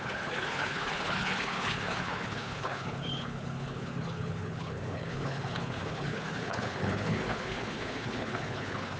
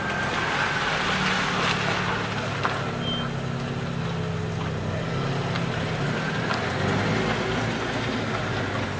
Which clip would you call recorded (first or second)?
second